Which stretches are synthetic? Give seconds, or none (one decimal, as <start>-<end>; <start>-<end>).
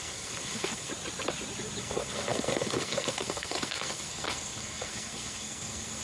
0.0-0.9; 1.8-6.0